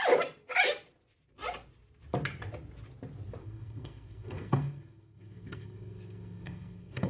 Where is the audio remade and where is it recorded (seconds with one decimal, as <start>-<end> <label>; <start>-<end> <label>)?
0.0-3.4 recorded; 3.4-7.1 remade